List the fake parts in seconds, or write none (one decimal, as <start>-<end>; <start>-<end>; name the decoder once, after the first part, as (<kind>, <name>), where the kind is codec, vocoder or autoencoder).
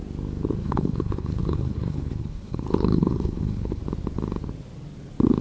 0.6-3.8 (codec, HILCodec)